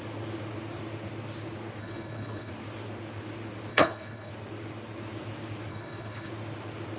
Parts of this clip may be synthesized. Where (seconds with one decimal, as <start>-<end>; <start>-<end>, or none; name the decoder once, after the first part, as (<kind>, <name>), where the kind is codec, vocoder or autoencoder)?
1.8-2.5 (codec, HILCodec); 3.7-4.3; 5.7-6.3